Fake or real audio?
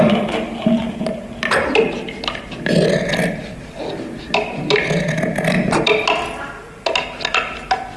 real